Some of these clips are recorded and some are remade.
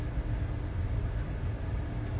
recorded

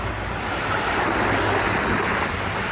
recorded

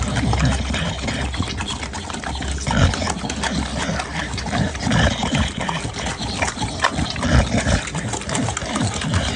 recorded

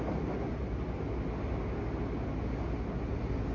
recorded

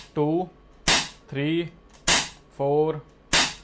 recorded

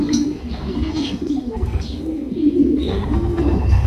remade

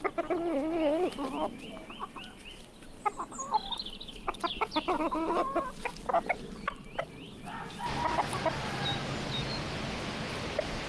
recorded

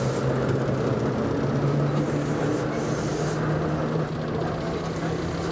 recorded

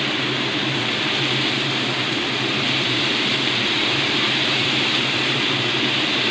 remade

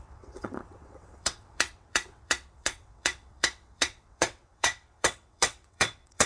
remade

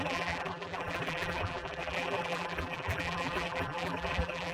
remade